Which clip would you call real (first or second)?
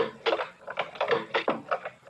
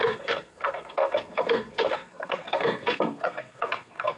first